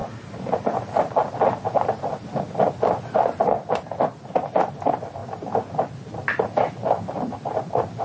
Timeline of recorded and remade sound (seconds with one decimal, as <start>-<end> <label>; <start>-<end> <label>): 0.0-8.0 recorded